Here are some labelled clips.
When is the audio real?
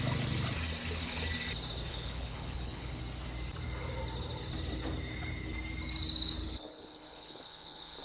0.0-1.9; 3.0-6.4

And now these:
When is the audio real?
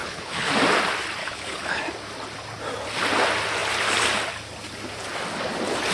0.5-1.2; 1.8-5.9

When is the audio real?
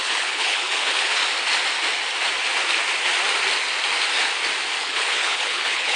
1.2-4.8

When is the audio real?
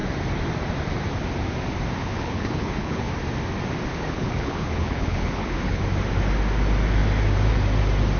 0.0-2.0; 3.1-3.9; 5.8-8.2